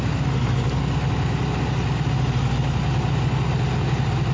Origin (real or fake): real